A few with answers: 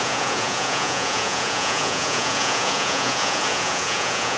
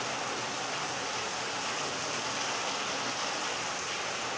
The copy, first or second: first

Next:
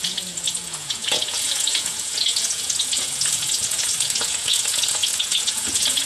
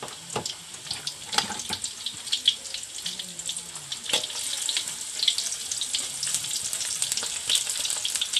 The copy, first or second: first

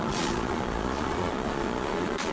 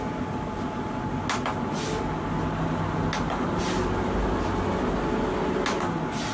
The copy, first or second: first